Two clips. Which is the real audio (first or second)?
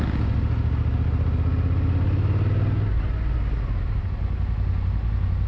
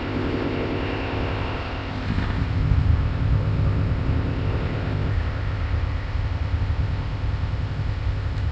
first